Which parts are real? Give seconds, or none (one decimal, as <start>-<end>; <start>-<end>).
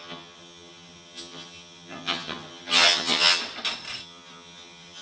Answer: 3.4-4.0